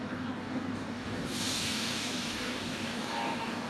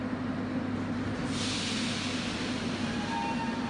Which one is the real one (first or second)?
second